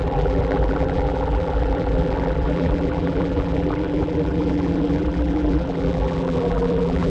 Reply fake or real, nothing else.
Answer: fake